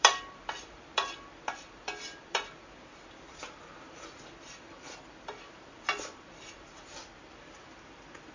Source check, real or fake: fake